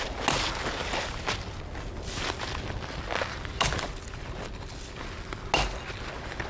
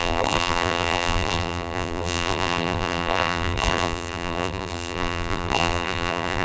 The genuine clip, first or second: first